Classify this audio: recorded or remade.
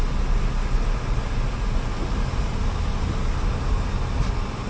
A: recorded